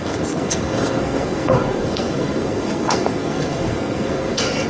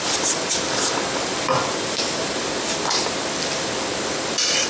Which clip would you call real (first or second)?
second